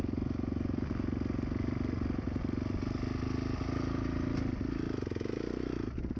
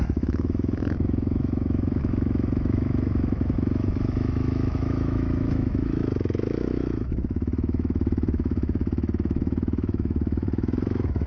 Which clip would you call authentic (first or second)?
first